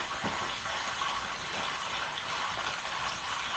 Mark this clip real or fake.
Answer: real